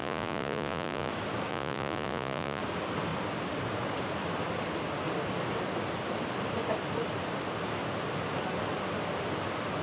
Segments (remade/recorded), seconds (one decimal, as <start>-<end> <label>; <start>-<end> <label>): 0.0-1.1 remade; 1.1-1.5 recorded; 1.5-2.6 remade; 2.6-9.8 recorded